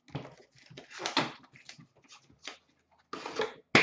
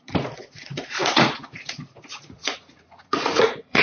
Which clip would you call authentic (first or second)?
first